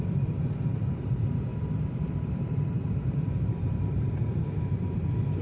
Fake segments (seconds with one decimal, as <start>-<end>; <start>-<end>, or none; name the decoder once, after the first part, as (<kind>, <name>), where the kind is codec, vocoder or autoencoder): 0.0-5.4 (vocoder, BigVGAN v2)